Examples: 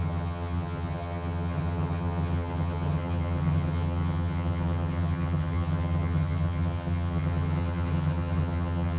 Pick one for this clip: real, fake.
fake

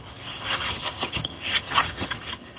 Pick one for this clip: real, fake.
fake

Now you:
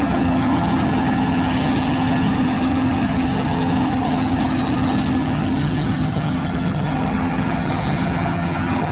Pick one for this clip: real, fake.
fake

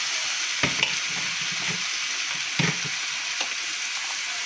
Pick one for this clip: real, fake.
real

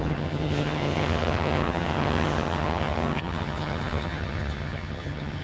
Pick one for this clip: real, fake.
fake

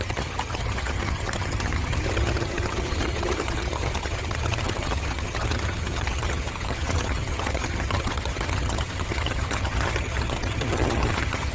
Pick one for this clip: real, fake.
fake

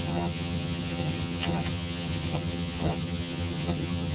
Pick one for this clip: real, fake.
fake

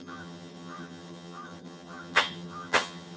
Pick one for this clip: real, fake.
fake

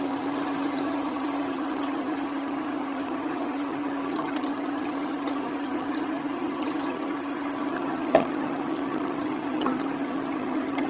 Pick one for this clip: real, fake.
fake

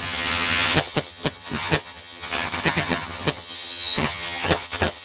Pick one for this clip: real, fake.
fake